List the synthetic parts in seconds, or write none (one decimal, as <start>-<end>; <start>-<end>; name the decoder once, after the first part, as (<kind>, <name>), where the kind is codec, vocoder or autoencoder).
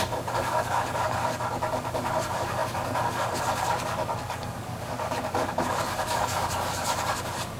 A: 0.0-7.6 (codec, DAC)